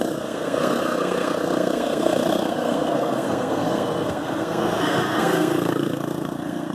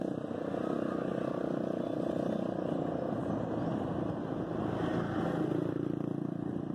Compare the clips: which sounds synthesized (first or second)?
first